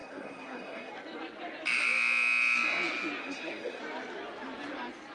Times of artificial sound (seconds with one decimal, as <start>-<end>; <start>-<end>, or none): 0.0-0.9; 3.2-3.8